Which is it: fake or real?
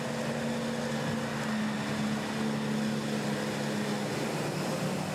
real